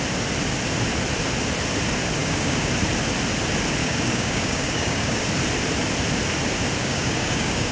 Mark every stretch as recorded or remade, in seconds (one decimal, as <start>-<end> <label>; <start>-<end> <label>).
0.0-2.2 recorded; 2.2-2.7 remade; 2.7-3.8 recorded; 3.8-5.2 remade; 5.2-6.8 recorded; 6.8-7.7 remade